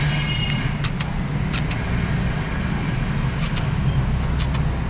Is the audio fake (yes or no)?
no